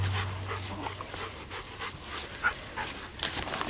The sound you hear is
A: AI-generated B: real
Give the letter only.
B